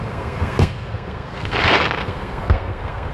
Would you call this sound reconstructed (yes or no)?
yes